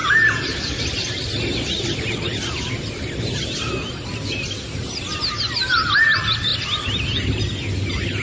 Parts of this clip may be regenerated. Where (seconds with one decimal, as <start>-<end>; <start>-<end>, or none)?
none